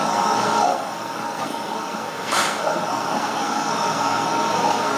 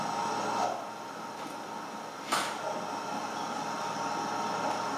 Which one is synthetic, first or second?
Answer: first